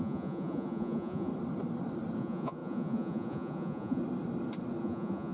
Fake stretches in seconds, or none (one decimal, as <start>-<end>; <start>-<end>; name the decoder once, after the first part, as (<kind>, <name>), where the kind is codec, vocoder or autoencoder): 0.0-1.3 (vocoder, Vocos); 2.2-4.0; 4.8-5.3